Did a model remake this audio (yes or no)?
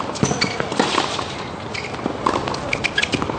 no